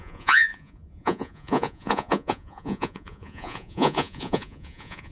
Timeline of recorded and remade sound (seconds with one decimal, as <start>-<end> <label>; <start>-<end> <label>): 0.0-5.1 remade